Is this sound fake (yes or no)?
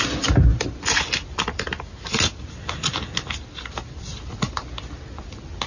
no